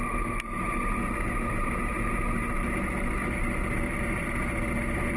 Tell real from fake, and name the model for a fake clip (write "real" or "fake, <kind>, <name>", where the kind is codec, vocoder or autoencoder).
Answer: real